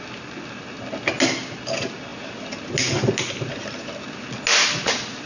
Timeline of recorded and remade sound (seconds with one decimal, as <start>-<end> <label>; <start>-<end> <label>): 0.0-5.3 recorded